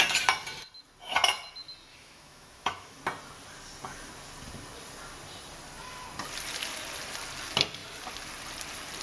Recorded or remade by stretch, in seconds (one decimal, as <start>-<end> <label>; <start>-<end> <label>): 0.0-1.9 recorded; 1.9-3.0 remade; 3.0-9.0 recorded